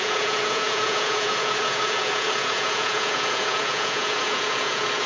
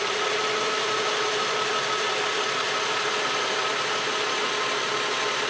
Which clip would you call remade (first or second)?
first